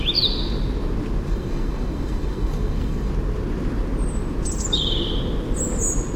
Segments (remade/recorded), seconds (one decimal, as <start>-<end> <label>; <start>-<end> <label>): 0.0-1.3 recorded; 1.3-3.1 remade; 3.1-6.2 recorded

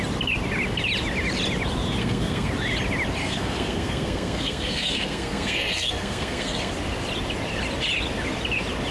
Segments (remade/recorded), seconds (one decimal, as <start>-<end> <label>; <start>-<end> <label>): 0.0-2.0 recorded; 2.0-2.5 remade; 2.5-3.2 recorded; 3.2-6.7 remade; 6.7-8.9 recorded